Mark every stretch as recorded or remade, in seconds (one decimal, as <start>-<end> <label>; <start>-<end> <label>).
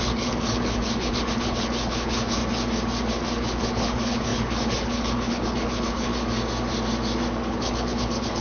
0.0-2.4 remade; 2.4-3.1 recorded; 3.1-6.1 remade; 6.1-7.5 recorded; 7.5-8.4 remade